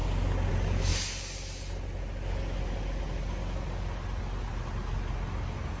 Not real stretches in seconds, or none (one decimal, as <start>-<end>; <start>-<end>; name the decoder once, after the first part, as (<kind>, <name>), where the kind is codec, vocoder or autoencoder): none